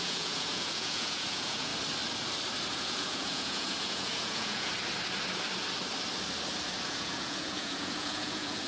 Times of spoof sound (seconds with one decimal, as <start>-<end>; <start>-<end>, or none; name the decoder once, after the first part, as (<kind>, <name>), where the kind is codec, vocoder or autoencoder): 0.0-1.7 (vocoder, Vocos); 2.7-4.7; 6.9-8.7